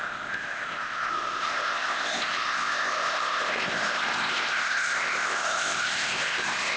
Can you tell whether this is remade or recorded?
remade